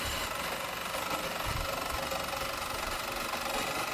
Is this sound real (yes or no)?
yes